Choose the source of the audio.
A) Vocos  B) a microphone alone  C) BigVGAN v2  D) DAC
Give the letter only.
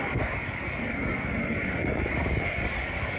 D